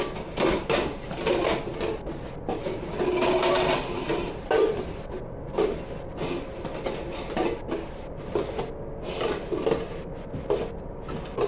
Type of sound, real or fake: real